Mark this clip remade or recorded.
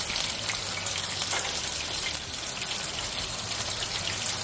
recorded